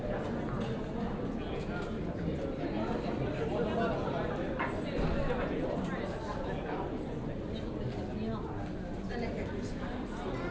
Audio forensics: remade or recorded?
recorded